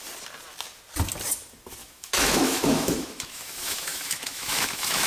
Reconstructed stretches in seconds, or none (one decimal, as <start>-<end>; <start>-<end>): 1.8-5.1